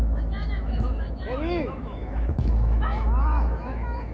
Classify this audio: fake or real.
fake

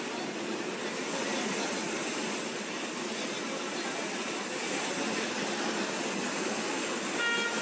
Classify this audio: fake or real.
real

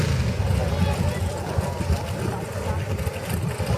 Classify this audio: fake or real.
real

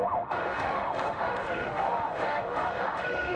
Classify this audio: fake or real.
fake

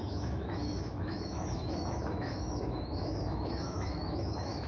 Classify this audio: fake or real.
fake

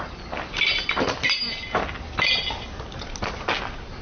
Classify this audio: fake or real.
real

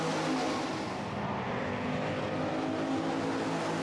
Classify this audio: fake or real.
real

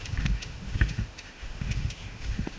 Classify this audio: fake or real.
fake